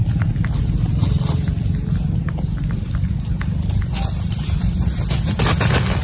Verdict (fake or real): real